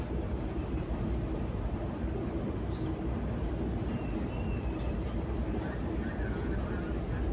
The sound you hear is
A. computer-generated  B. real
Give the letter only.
B